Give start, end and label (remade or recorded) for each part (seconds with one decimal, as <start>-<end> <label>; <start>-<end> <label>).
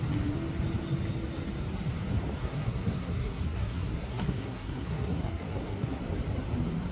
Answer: 0.0-2.4 recorded; 2.4-6.0 remade; 6.0-6.9 recorded